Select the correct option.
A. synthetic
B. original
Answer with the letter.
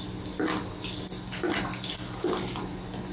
B